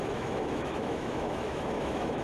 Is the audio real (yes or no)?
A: no